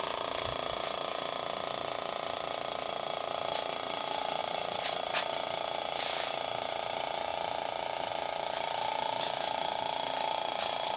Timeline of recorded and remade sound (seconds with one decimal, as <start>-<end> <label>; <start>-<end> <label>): 0.0-4.4 recorded; 4.4-5.2 remade; 5.2-11.0 recorded